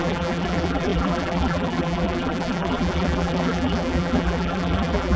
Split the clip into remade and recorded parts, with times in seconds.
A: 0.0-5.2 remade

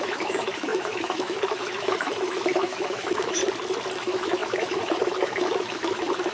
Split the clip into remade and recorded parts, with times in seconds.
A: 0.0-3.4 remade; 3.4-4.0 recorded; 4.0-6.3 remade

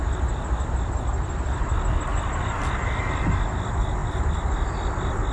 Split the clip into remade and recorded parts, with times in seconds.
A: 0.0-2.1 recorded; 2.1-2.6 remade; 2.6-4.0 recorded; 4.0-5.3 remade

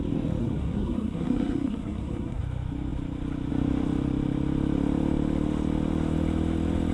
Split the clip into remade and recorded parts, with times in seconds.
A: 0.0-0.4 recorded; 0.4-2.4 remade; 2.4-6.9 recorded

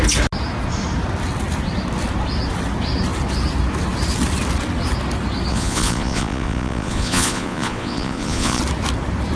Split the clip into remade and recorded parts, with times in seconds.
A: 0.0-5.5 recorded; 5.5-8.6 remade; 8.6-9.4 recorded